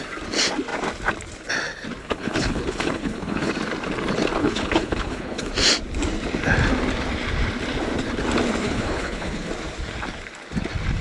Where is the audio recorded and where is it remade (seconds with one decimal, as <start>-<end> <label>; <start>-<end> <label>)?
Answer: 0.0-2.0 recorded; 2.0-3.5 remade; 3.5-4.4 recorded; 4.4-5.5 remade; 5.5-8.6 recorded; 8.6-9.5 remade; 9.5-11.0 recorded